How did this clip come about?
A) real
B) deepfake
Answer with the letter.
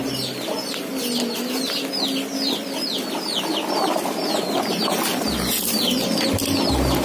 A